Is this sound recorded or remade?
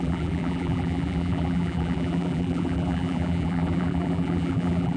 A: remade